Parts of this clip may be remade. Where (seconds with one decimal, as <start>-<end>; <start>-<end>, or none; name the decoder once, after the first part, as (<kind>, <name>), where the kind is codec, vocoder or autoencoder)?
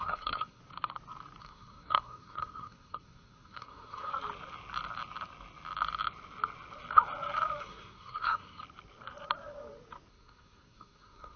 0.0-0.6 (codec, SNAC); 1.4-4.1; 7.6-8.6; 10.1-11.4